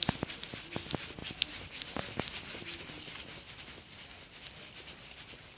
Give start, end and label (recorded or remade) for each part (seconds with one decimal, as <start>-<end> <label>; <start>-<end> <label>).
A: 0.0-5.6 recorded